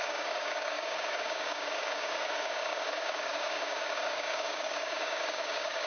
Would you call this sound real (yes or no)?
no